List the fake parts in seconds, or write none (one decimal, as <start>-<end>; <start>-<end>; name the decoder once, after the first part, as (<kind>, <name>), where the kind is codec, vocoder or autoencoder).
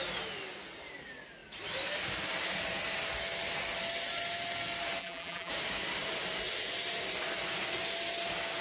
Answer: 5.0-5.5 (vocoder, BigVGAN v2)